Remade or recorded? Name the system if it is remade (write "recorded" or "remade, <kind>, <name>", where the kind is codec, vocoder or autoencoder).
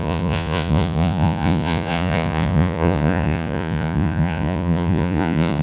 remade, vocoder, Vocos